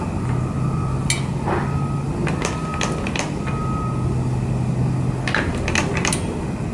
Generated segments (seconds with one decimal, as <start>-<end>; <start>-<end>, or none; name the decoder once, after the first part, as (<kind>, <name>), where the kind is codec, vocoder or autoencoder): none